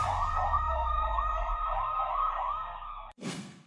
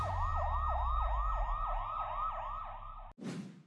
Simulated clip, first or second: first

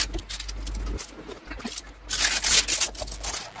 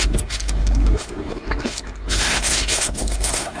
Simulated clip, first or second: second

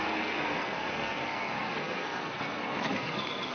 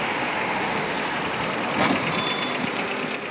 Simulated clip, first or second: first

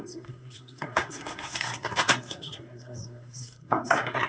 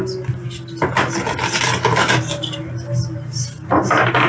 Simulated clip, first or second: first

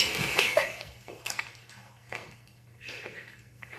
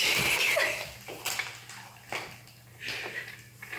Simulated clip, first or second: first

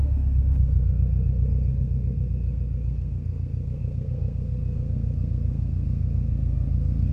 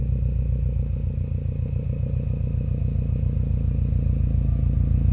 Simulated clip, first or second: first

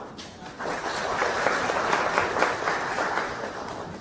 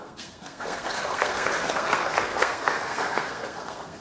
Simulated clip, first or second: second